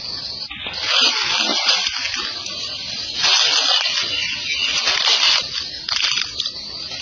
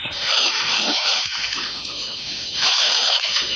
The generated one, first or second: second